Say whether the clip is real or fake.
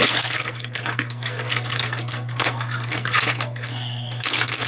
fake